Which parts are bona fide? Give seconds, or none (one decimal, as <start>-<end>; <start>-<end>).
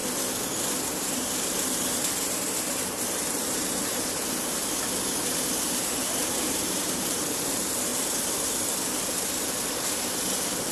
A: 0.0-0.7; 4.6-5.2; 7.9-10.7